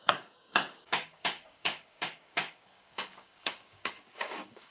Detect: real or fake fake